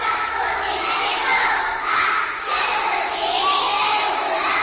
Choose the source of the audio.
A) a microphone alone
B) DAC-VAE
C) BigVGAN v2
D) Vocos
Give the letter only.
B